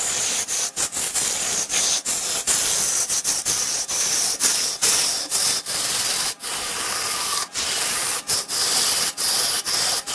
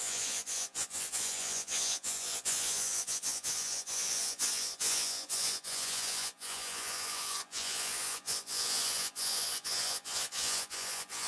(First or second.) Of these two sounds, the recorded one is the first